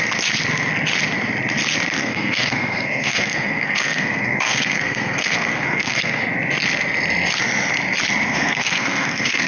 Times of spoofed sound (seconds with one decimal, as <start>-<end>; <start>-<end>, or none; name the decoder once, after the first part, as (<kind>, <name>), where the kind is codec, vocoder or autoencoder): 2.0-6.2 (codec, SNAC); 8.3-9.5